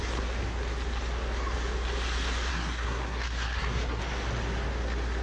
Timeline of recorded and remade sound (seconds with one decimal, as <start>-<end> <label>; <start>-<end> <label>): 0.0-2.5 recorded; 2.5-4.0 remade; 4.0-5.2 recorded